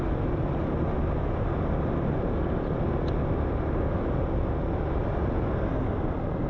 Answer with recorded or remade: recorded